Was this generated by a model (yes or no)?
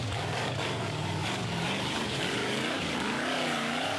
yes